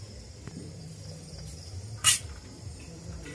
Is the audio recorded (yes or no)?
no